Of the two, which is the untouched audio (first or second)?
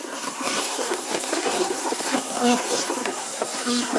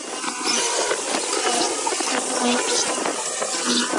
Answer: second